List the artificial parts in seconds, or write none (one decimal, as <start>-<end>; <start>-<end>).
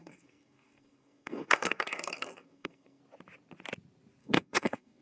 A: 0.0-3.0; 4.2-5.0